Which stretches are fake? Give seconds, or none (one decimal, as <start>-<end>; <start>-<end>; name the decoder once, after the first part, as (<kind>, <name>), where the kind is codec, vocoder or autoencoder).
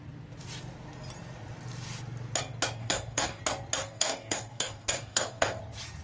2.8-3.4 (codec, DAC); 3.8-5.6